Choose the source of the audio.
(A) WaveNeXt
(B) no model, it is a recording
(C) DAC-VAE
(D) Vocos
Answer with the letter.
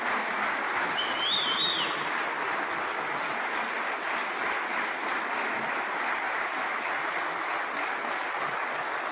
B